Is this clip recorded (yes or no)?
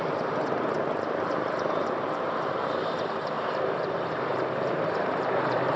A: no